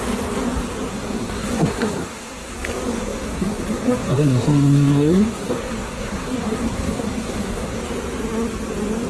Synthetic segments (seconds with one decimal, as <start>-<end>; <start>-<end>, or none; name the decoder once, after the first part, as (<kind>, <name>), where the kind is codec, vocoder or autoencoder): 0.9-2.5 (codec, SNAC); 2.9-7.8